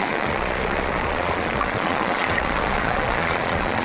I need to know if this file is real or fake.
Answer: fake